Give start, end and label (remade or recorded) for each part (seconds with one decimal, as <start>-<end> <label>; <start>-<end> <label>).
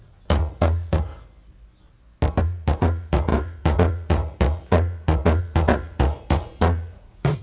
0.0-1.1 remade; 1.1-2.4 recorded; 2.4-7.4 remade